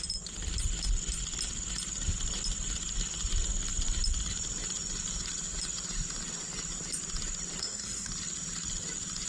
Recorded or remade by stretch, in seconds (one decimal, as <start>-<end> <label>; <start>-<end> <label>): 0.0-7.6 recorded; 7.6-8.1 remade; 8.1-9.3 recorded